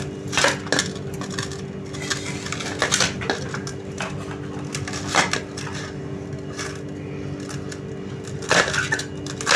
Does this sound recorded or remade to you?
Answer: recorded